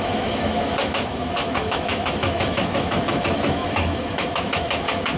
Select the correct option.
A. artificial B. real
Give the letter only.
A